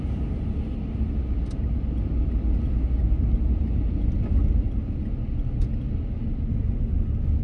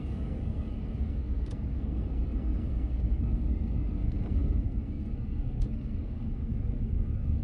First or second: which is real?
first